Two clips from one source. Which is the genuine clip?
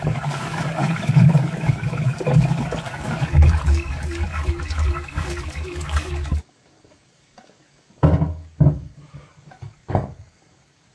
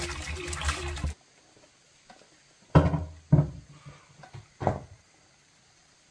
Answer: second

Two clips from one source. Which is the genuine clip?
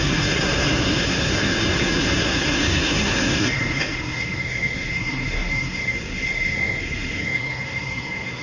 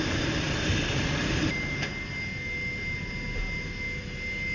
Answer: second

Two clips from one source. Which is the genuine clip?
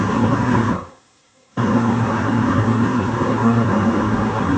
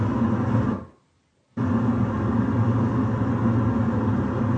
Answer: second